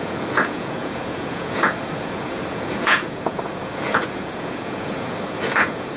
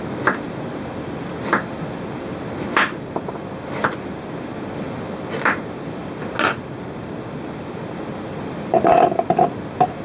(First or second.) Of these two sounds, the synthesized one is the first